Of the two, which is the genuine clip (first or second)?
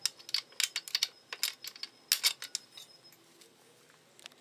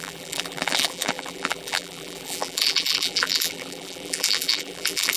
first